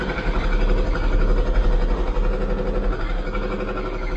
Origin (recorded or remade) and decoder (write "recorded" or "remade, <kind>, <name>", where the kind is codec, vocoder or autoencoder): recorded